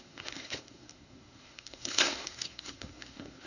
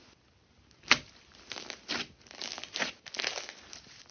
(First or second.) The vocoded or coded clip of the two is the first